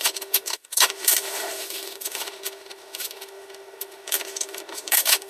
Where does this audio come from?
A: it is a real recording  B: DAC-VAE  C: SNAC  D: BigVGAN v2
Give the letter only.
B